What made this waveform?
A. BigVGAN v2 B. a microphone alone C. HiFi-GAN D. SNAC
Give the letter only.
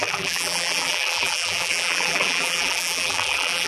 A